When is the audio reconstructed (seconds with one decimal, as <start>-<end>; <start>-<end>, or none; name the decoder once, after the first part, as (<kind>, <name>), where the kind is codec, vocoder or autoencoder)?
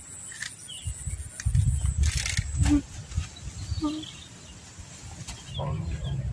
none